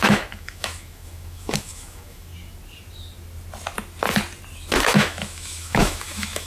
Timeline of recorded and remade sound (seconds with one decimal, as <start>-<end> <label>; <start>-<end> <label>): 0.0-2.3 remade; 2.3-4.8 recorded; 4.8-6.5 remade